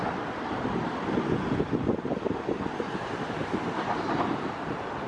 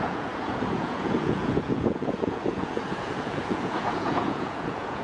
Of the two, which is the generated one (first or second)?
second